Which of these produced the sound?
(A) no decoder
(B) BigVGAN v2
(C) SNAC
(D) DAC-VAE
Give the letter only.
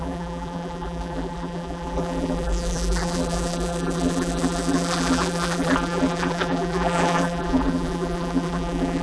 B